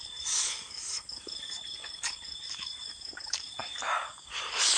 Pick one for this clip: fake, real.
fake